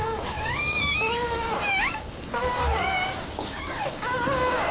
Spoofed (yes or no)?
yes